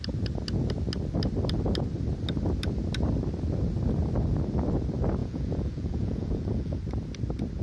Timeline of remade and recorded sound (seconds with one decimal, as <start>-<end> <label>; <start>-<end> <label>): 0.0-5.2 recorded; 5.2-6.8 remade; 6.8-7.6 recorded